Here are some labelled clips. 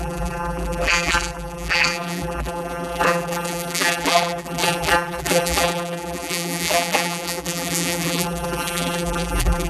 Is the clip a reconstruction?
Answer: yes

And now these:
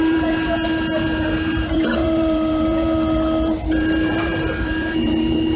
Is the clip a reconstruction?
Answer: yes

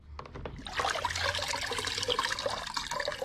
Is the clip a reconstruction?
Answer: no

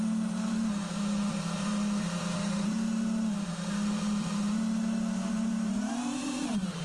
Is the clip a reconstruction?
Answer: yes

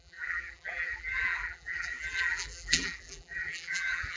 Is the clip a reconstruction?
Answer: yes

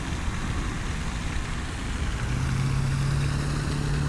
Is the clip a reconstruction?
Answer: no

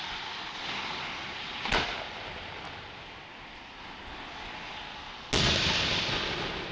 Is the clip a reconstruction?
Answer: no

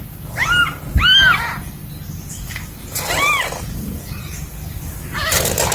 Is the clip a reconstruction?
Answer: no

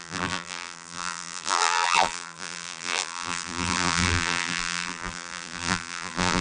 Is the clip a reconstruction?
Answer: yes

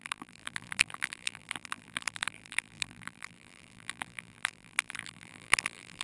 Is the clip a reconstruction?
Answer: yes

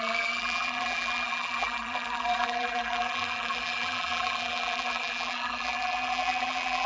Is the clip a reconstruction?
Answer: yes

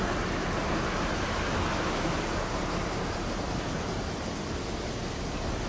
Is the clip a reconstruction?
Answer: no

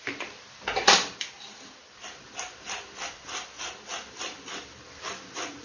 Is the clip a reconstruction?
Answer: yes